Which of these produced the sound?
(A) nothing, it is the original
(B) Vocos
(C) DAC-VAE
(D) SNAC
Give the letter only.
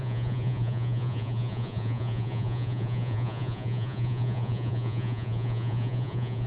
B